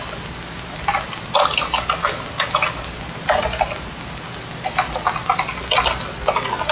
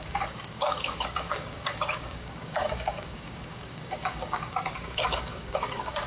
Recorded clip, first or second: first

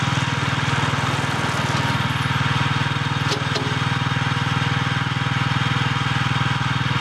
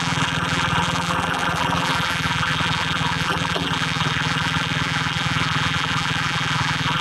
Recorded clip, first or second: first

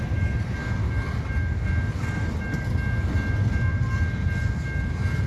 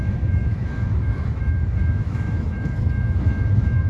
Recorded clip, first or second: first